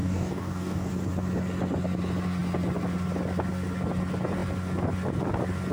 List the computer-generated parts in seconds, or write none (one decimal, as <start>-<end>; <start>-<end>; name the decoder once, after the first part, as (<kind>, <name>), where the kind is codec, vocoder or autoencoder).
0.0-0.9 (codec, DAC)